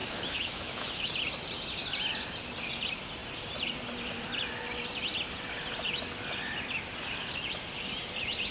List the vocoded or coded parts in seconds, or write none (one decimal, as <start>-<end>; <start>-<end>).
0.0-1.1